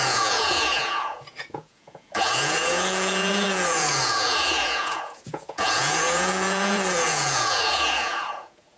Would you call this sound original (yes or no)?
no